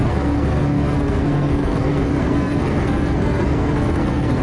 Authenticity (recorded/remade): remade